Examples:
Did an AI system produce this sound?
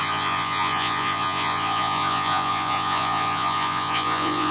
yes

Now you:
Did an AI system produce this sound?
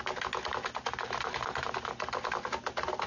no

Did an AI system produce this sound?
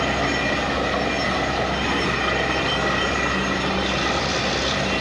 no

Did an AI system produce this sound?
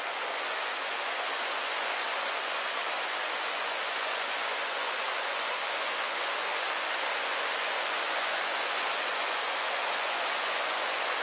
yes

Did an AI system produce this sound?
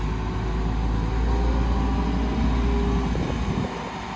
no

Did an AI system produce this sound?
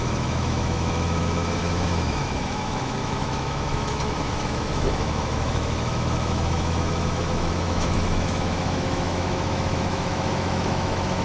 yes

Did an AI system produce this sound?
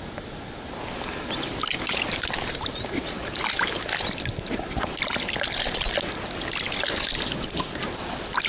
no